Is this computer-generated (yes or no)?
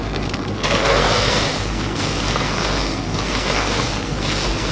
yes